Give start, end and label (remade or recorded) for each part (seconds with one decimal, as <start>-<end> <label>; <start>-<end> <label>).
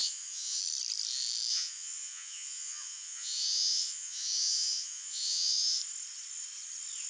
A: 0.0-0.6 remade; 0.6-1.5 recorded; 1.5-5.8 remade; 5.8-7.1 recorded